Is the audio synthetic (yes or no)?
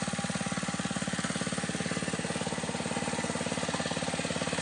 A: no